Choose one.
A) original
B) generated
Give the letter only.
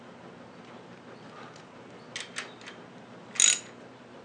A